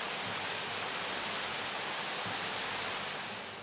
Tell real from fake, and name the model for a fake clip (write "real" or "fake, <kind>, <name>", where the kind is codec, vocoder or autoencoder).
real